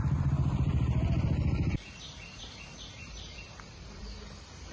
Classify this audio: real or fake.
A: fake